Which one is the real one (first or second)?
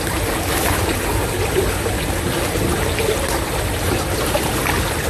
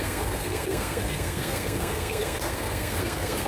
first